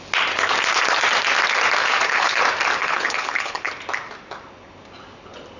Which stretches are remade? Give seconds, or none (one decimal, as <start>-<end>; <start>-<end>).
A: 1.8-2.4; 2.8-3.7